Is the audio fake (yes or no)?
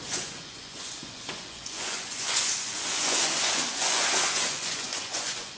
yes